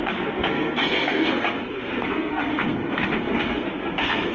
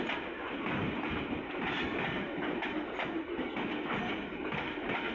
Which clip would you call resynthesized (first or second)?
first